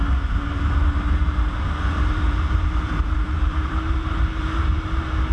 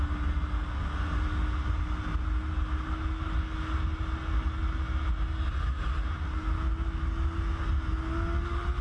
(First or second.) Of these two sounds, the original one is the second